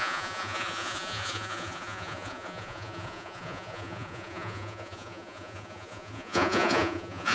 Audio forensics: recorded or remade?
remade